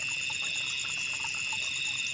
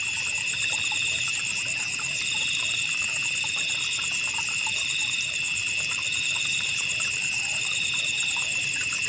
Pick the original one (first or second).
first